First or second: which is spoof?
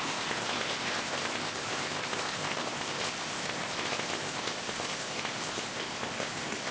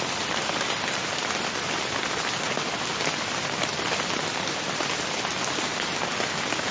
first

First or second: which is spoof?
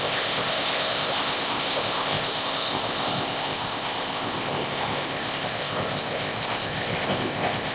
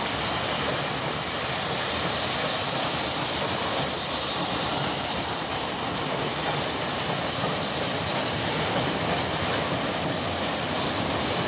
first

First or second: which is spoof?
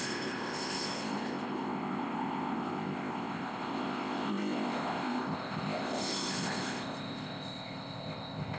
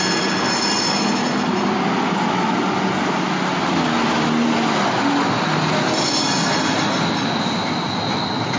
first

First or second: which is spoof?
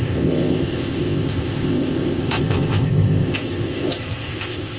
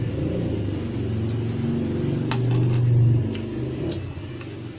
first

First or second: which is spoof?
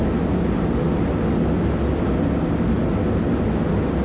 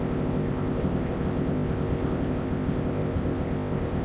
second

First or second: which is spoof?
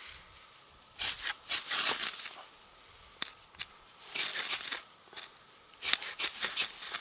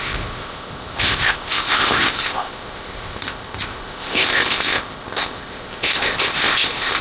second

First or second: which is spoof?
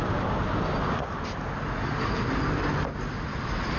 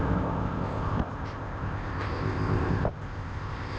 second